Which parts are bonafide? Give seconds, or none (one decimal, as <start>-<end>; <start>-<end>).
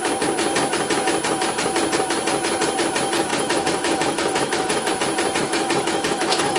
0.0-3.3; 4.9-5.4